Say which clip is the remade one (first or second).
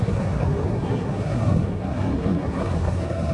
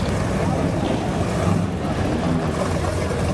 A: first